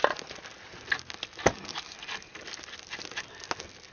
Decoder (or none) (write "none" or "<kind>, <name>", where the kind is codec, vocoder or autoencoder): none